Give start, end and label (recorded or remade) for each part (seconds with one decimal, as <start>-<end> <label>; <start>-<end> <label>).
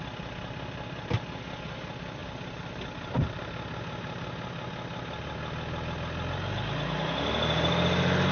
0.0-8.3 recorded